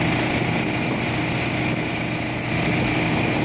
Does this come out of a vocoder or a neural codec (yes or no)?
no